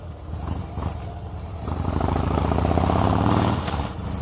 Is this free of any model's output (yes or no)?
no